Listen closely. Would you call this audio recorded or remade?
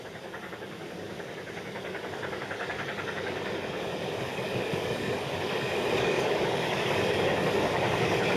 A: remade